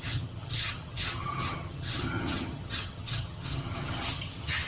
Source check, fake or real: fake